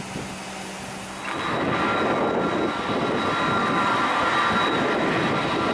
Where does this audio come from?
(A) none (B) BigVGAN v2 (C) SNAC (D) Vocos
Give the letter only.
A